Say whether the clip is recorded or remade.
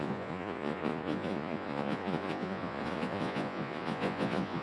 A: remade